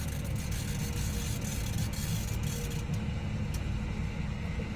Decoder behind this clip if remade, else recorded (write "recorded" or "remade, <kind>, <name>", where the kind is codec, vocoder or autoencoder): recorded